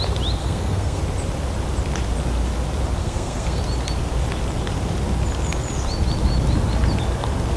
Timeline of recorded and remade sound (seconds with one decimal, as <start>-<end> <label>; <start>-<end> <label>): 0.0-0.4 recorded; 0.4-1.0 remade; 1.0-3.0 recorded; 3.0-3.6 remade; 3.6-7.6 recorded